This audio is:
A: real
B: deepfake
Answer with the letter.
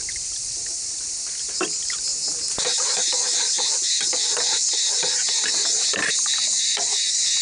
A